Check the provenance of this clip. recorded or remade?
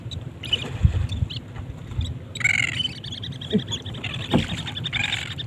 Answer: recorded